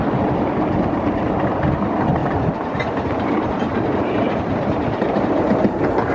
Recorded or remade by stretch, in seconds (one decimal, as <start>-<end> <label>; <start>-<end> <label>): 0.0-2.2 recorded; 2.2-6.1 remade